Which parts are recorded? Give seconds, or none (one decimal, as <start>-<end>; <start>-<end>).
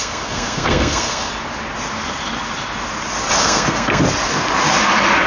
1.3-3.3; 4.0-5.3